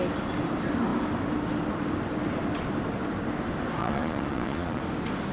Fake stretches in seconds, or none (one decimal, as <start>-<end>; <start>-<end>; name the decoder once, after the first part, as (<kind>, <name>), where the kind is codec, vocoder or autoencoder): 3.8-4.8 (vocoder, Vocos)